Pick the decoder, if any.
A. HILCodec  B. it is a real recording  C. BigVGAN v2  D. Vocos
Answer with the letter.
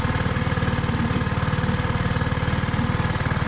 B